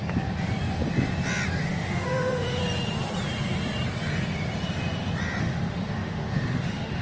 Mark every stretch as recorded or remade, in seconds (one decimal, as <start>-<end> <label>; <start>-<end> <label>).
0.0-1.6 recorded; 1.6-2.6 remade; 2.6-5.4 recorded; 5.4-7.0 remade